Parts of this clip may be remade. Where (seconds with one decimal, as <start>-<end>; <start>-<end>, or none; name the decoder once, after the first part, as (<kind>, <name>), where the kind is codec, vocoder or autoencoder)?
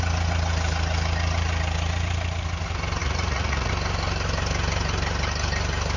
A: 3.0-3.7 (vocoder, Vocos)